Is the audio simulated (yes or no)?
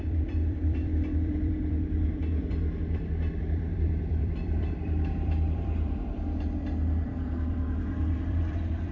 yes